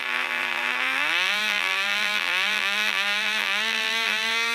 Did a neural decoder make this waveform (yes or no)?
yes